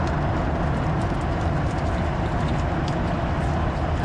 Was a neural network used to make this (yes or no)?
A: no